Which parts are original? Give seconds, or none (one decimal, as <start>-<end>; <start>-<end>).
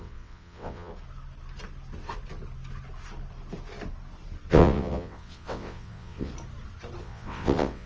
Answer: 0.9-4.5; 6.3-7.0